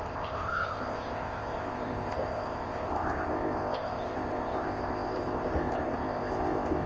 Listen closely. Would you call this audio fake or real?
fake